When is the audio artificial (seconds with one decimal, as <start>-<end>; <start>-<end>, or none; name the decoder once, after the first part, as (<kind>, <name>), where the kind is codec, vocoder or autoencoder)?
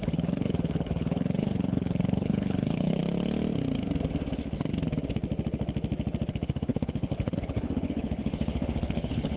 0.0-3.0 (codec, HILCodec); 6.3-9.4